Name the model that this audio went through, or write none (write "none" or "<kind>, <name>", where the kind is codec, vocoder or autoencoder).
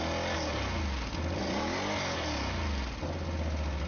none